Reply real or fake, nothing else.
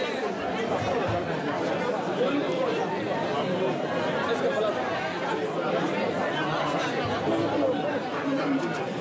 real